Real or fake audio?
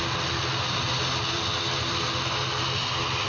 real